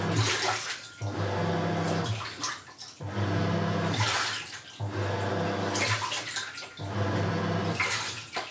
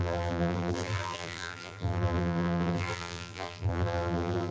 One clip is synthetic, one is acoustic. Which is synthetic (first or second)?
second